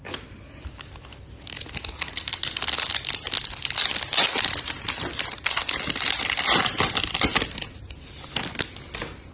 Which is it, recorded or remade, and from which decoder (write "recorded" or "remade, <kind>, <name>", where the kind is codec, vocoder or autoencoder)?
recorded